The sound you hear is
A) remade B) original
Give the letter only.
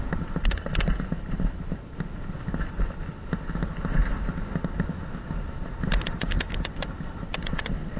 B